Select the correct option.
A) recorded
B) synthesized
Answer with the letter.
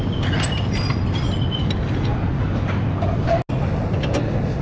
A